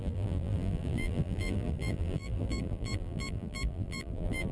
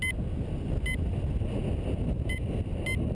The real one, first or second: second